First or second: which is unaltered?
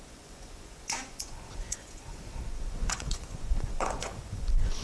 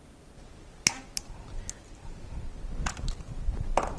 second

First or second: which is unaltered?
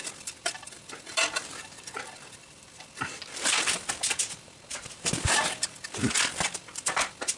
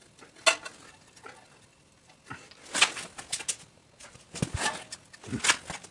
second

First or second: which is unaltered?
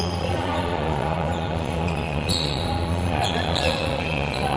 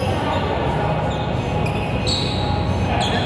second